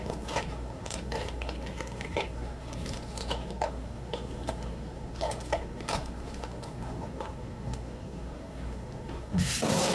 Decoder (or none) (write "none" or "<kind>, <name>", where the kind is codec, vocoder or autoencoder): codec, SNAC